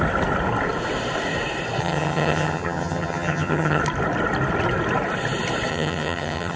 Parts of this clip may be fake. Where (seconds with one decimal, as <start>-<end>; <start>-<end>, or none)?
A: 1.8-3.8; 5.7-6.6